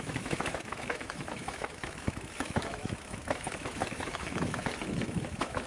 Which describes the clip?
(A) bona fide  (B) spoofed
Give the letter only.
B